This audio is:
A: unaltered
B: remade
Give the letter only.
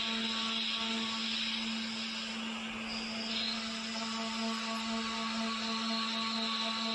A